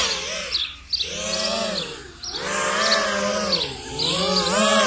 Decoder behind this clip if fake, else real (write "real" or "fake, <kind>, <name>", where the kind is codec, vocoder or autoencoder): real